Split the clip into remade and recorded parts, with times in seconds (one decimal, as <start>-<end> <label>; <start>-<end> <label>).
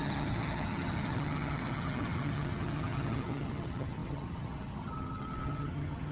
0.0-6.1 remade